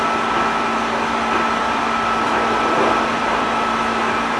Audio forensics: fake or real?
fake